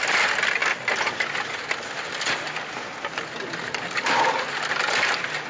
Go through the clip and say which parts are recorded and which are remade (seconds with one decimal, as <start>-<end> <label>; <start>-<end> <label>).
0.0-5.5 recorded